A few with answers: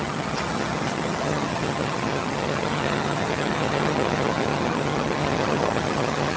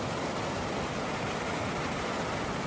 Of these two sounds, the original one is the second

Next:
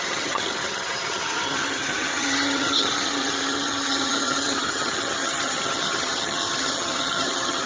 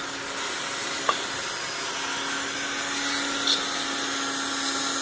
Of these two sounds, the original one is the second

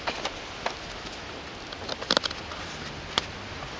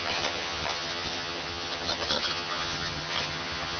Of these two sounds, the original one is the first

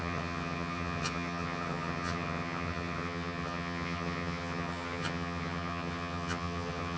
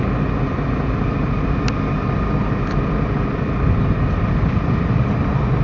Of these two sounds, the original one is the second